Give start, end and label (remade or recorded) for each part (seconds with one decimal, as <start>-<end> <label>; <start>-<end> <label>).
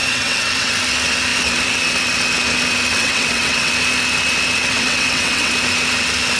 0.0-0.7 remade; 0.7-2.9 recorded; 2.9-3.7 remade; 3.7-4.6 recorded; 4.6-5.5 remade; 5.5-6.4 recorded